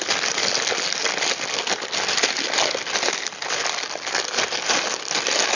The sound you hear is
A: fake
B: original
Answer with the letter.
B